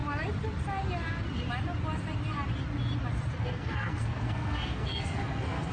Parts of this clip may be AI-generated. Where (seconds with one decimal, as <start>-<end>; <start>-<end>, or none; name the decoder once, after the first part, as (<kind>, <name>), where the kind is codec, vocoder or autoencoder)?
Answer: 3.4-5.7 (codec, SNAC)